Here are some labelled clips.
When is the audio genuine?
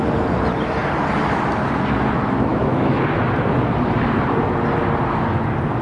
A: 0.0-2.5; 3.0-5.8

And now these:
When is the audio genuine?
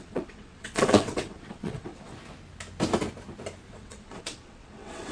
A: 2.1-3.7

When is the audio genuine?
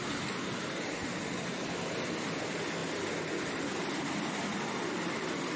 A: 0.0-5.6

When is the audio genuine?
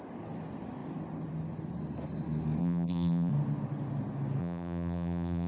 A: 0.0-2.6; 3.3-4.4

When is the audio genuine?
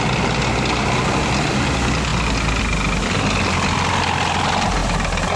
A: 0.0-5.4